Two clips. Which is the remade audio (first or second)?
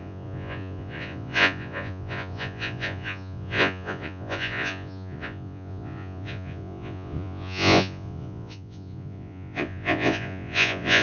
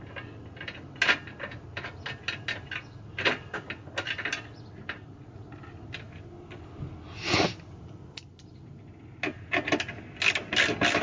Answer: first